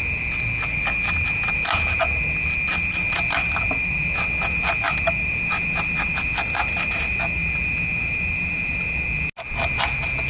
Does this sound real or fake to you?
real